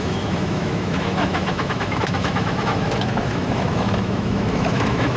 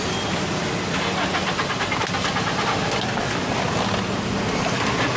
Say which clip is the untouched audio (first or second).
second